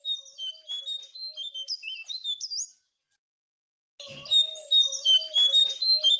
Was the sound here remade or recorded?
recorded